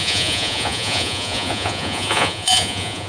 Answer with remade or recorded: remade